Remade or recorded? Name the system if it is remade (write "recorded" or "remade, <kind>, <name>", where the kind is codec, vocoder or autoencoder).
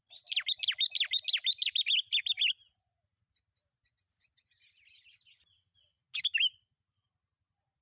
recorded